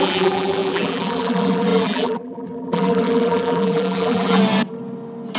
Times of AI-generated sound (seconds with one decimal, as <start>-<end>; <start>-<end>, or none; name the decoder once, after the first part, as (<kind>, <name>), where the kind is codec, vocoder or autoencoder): 0.0-4.4 (vocoder, BigVGAN v2)